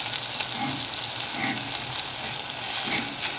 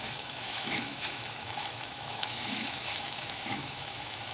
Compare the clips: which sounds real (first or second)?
first